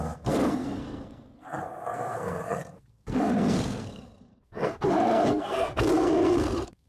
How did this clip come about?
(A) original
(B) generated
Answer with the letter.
B